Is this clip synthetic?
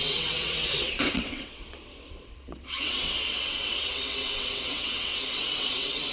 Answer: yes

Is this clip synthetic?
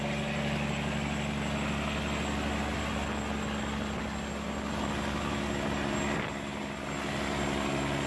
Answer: no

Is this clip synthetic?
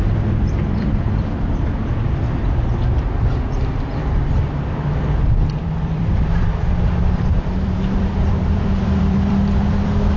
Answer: yes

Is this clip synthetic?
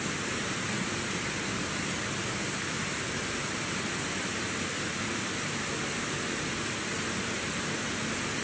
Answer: yes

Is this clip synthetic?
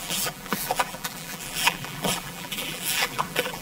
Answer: yes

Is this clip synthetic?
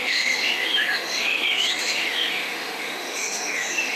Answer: yes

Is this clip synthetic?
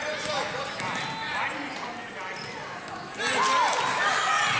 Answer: no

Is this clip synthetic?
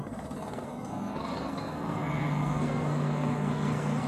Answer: yes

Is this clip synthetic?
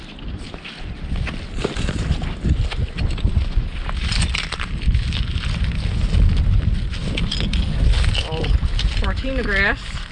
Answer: no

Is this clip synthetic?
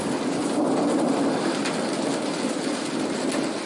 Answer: no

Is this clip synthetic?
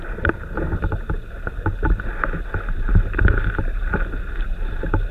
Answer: no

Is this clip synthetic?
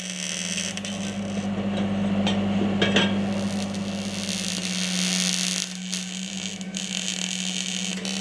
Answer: no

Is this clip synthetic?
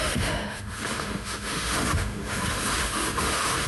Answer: yes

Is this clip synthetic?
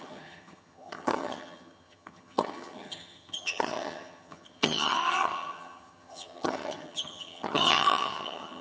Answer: yes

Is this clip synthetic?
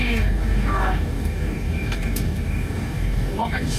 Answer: yes